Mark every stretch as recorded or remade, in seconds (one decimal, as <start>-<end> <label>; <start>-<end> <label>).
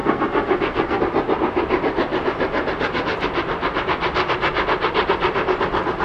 0.0-1.0 remade; 1.0-6.0 recorded